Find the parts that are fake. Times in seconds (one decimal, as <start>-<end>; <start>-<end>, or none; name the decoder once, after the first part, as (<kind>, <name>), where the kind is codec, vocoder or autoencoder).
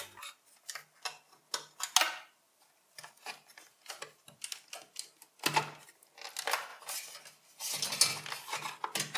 none